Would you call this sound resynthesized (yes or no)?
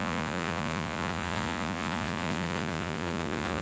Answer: yes